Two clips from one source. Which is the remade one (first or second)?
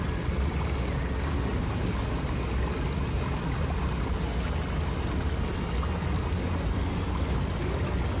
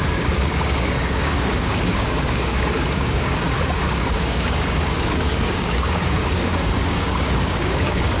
second